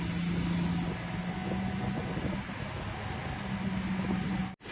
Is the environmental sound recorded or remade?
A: recorded